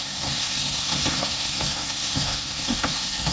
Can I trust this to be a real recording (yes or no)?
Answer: no